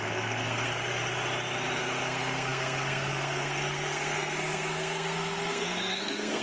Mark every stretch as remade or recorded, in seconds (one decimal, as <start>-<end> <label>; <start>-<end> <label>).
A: 0.0-1.0 remade; 1.0-1.8 recorded; 1.8-6.4 remade

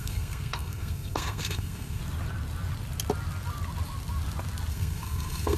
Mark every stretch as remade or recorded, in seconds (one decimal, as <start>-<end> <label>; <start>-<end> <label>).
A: 0.0-2.0 remade; 2.0-4.7 recorded; 4.7-5.6 remade

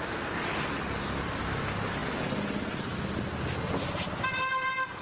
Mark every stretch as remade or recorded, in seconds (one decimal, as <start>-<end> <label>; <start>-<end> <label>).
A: 0.0-5.0 recorded

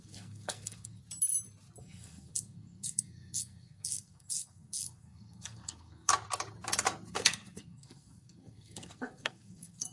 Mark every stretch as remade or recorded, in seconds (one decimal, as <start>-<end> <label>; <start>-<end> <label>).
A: 0.0-1.0 remade; 1.0-1.8 recorded; 1.8-6.1 remade; 6.1-7.1 recorded; 7.1-9.9 remade

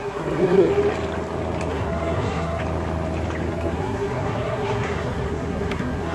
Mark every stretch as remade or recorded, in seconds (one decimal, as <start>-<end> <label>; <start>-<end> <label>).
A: 0.0-0.7 remade; 0.7-1.7 recorded; 1.7-2.6 remade; 2.6-3.5 recorded; 3.5-6.1 remade

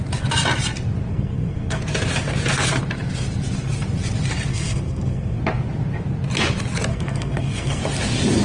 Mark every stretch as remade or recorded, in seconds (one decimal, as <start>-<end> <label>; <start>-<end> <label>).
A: 0.0-1.1 recorded; 1.1-1.8 remade; 1.8-4.5 recorded; 4.5-5.4 remade; 5.4-6.9 recorded; 6.9-7.8 remade; 7.8-8.4 recorded

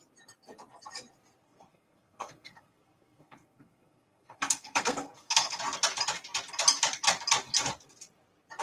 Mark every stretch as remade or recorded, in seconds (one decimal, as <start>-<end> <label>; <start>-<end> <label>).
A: 0.0-1.4 recorded; 1.4-5.6 remade; 5.6-8.6 recorded

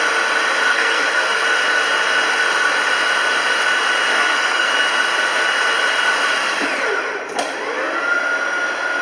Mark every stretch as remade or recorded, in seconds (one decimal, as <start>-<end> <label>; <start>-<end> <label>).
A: 0.0-0.7 recorded; 0.7-1.4 remade; 1.4-4.1 recorded; 4.1-4.7 remade; 4.7-9.0 recorded